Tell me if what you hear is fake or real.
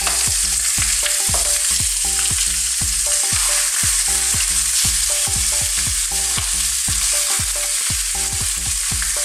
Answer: real